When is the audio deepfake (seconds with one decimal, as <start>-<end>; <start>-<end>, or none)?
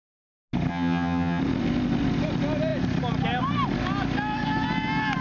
0.7-1.4